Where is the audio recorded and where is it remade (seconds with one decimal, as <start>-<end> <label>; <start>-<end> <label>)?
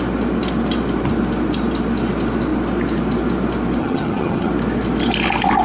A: 0.0-3.8 recorded; 3.8-4.5 remade; 4.5-5.6 recorded